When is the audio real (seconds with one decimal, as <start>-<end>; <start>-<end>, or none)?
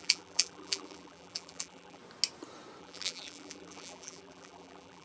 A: 2.0-2.8